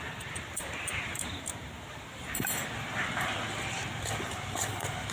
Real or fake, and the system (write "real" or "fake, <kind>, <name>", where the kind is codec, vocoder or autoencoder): fake, vocoder, BigVGAN v2